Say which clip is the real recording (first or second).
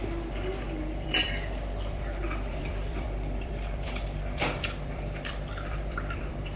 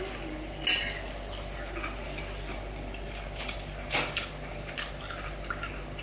second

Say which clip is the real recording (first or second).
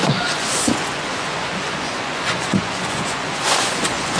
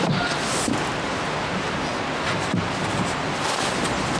second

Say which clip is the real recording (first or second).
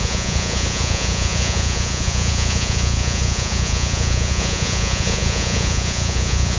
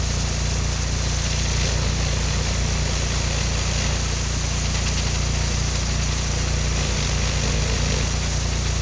second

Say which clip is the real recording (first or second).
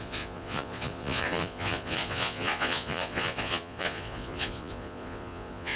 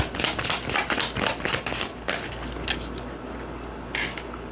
second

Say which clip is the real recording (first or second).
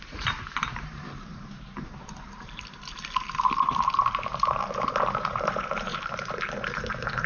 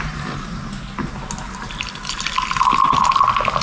second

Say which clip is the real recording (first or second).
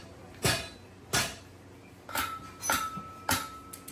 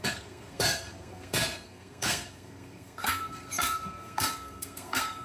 first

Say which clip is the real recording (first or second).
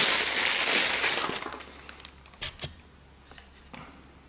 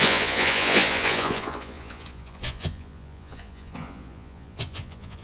first